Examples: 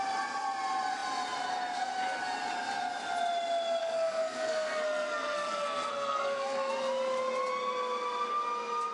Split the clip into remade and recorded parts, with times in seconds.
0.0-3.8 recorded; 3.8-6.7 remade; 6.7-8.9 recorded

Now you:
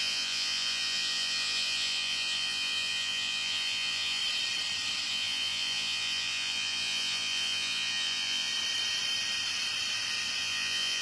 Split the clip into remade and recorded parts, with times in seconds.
0.0-4.2 remade; 4.2-5.1 recorded; 5.1-8.5 remade; 8.5-10.4 recorded; 10.4-11.0 remade

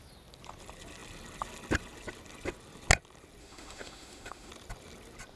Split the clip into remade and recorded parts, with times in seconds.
0.0-3.4 recorded; 3.4-4.5 remade; 4.5-5.4 recorded

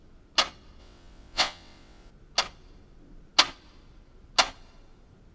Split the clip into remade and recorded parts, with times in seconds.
0.0-0.8 recorded; 0.8-2.1 remade; 2.1-5.3 recorded

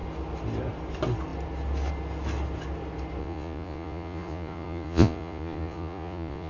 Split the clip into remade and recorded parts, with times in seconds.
0.0-3.2 recorded; 3.2-6.5 remade

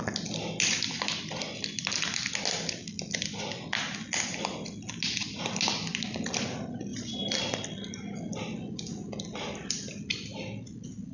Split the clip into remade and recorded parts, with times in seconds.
0.0-11.1 recorded

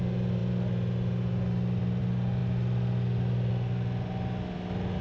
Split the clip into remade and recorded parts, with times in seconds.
0.0-5.0 recorded

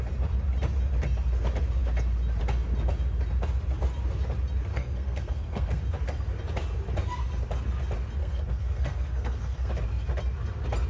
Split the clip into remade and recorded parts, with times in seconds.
0.0-4.7 recorded; 4.7-5.8 remade; 5.8-8.2 recorded; 8.2-9.7 remade; 9.7-10.9 recorded